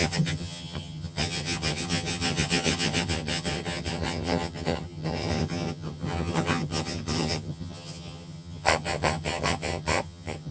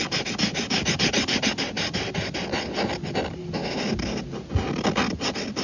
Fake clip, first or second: first